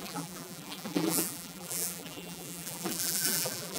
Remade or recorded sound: remade